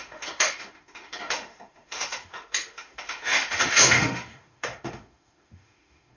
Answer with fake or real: fake